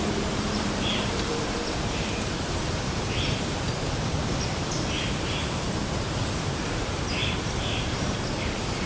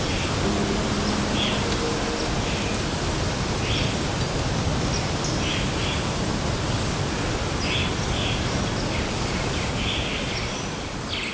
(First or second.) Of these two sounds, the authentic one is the second